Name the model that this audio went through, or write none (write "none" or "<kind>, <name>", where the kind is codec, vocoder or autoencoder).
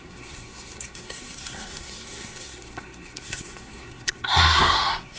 codec, SNAC